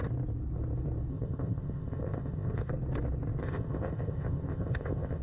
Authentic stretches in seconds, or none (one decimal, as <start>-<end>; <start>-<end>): 0.0-1.1; 2.7-3.4